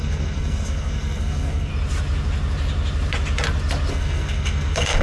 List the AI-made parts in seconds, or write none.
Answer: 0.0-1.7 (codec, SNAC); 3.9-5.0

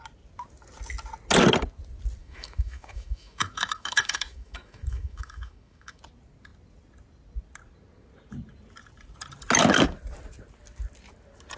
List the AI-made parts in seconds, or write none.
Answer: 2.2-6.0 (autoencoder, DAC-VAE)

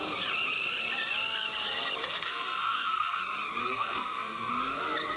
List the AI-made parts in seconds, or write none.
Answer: 2.0-3.2 (codec, SNAC); 3.6-4.5

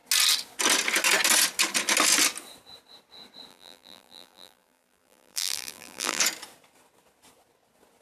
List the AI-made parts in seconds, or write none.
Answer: 3.5-6.2 (vocoder, BigVGAN v2)